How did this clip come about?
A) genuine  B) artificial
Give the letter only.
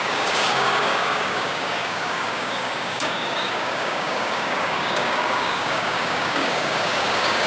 B